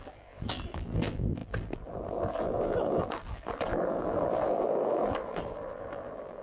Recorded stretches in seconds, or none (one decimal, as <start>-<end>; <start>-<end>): none